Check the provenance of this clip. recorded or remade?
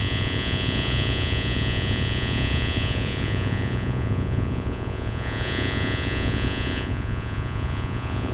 remade